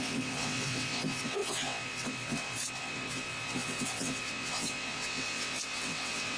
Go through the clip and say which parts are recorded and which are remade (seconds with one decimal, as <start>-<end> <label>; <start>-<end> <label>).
0.0-6.4 remade

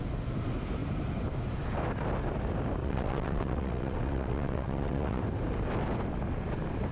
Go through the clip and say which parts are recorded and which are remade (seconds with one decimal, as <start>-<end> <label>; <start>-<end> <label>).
0.0-2.8 recorded; 2.8-5.2 remade; 5.2-6.9 recorded